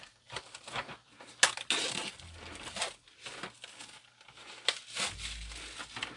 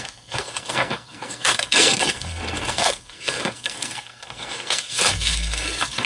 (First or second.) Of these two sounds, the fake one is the second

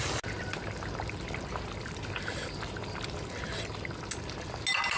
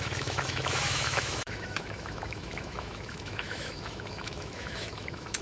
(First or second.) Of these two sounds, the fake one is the second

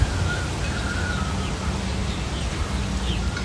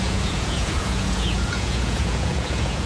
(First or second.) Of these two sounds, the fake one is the second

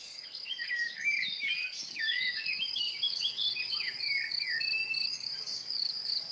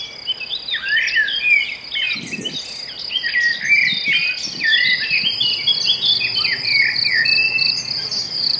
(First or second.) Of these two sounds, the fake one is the first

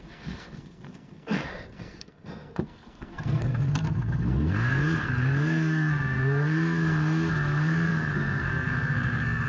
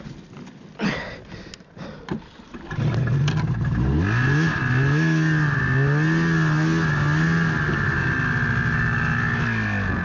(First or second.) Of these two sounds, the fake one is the first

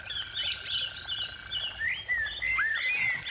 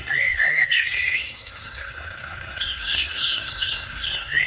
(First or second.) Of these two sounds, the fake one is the second